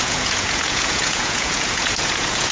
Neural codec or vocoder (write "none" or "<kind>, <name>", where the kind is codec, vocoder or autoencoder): vocoder, Vocos